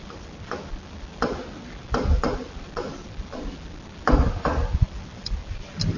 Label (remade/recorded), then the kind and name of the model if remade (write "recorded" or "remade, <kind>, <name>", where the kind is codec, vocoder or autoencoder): recorded